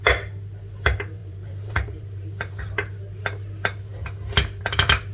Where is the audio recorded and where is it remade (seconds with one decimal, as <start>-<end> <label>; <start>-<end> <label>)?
0.0-1.2 recorded; 1.2-2.6 remade; 2.6-5.1 recorded